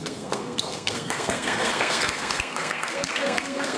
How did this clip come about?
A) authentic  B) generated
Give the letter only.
B